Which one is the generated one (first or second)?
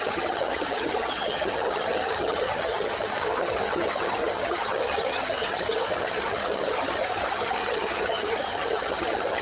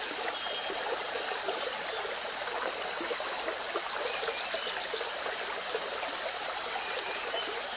first